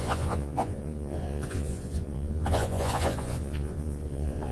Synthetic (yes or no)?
yes